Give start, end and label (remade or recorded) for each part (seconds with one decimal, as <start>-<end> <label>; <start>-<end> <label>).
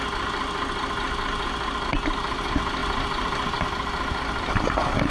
0.0-2.8 recorded; 2.8-3.6 remade; 3.6-5.1 recorded